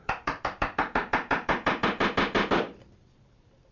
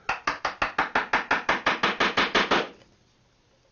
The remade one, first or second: first